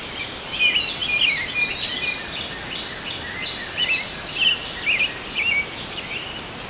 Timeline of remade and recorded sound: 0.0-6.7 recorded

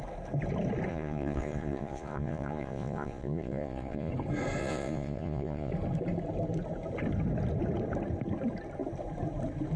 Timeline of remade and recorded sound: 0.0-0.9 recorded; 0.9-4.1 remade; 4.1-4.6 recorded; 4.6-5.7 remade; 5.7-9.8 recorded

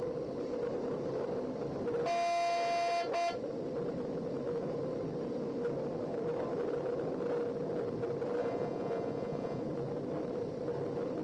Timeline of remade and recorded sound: 0.0-8.4 recorded; 8.4-9.6 remade; 9.6-11.2 recorded

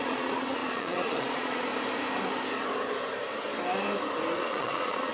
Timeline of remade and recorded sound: 0.0-1.7 remade; 1.7-4.4 recorded; 4.4-5.1 remade

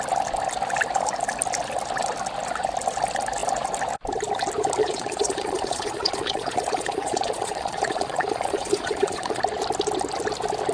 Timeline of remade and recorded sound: 0.0-4.8 recorded; 4.8-9.4 remade; 9.4-10.7 recorded

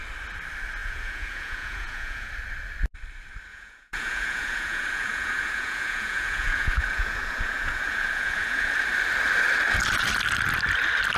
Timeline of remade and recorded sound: 0.0-0.8 recorded; 0.8-2.3 remade; 2.3-3.5 recorded; 3.5-8.7 remade; 8.7-11.2 recorded

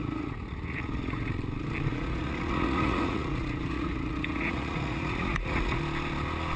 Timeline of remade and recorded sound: 0.0-1.3 remade; 1.3-1.9 recorded; 1.9-5.8 remade; 5.8-6.6 recorded

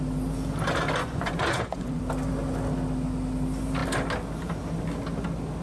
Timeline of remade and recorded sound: 0.0-1.0 recorded; 1.0-2.0 remade; 2.0-5.6 recorded